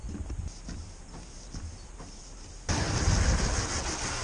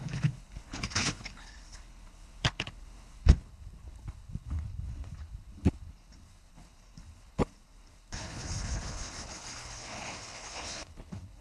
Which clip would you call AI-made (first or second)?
second